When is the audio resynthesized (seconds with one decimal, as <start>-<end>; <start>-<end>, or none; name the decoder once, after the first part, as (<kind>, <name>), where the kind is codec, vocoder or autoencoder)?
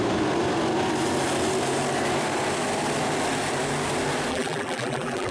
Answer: 4.3-5.3 (vocoder, BigVGAN v2)